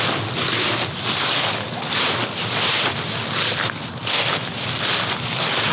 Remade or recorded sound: recorded